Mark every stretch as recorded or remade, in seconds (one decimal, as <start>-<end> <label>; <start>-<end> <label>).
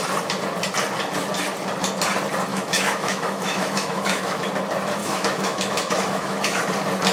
0.0-2.5 recorded; 2.5-4.5 remade; 4.5-5.0 recorded; 5.0-6.6 remade; 6.6-7.1 recorded